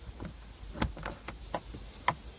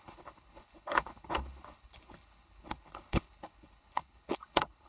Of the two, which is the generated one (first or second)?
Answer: second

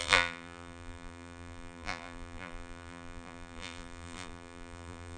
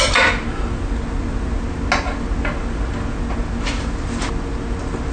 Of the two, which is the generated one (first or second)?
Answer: first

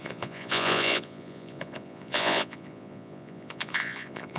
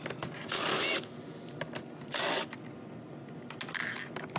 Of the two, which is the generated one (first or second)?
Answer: first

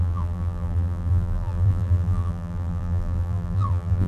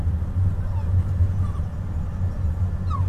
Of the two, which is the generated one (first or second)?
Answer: first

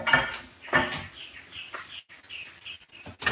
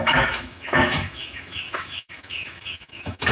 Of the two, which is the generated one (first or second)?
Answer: second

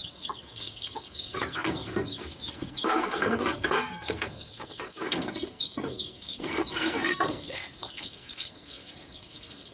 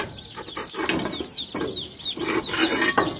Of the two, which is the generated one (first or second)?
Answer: first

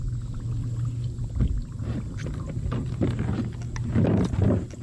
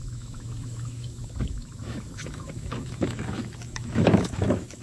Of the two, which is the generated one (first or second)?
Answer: second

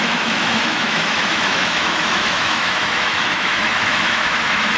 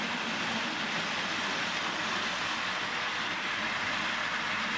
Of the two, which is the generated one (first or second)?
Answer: first